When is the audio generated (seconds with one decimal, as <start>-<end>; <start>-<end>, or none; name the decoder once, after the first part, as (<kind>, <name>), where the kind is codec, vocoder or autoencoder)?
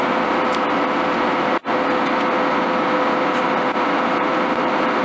none